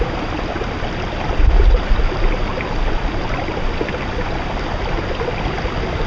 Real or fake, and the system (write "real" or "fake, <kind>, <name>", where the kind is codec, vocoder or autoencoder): real